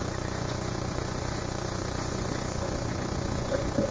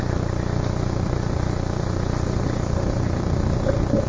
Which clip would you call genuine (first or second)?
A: second